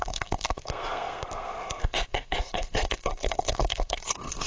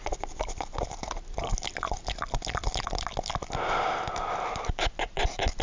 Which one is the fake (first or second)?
first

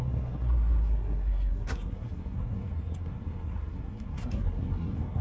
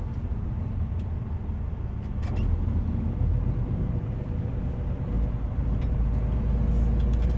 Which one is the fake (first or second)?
first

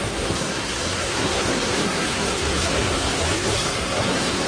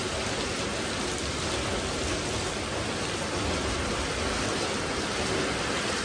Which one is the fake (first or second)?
first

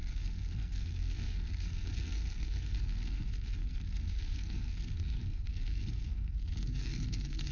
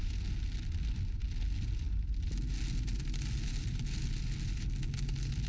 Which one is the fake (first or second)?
first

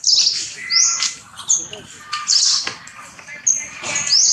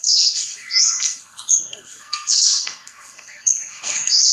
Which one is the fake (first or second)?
second